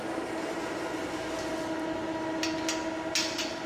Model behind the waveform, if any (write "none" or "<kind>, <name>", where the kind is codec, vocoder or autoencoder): none